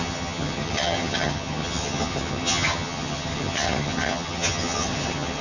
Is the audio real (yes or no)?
no